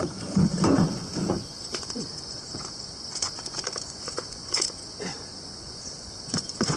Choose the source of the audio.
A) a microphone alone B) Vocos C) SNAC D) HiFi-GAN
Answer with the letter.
B